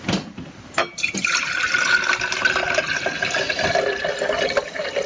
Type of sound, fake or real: real